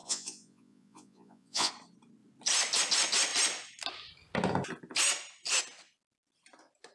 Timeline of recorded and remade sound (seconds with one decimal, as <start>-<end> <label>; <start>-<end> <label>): 0.0-1.7 remade; 1.7-6.9 recorded